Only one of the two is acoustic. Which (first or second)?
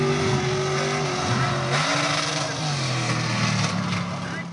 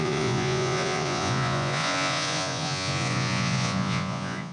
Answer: first